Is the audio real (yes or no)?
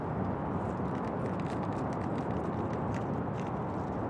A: yes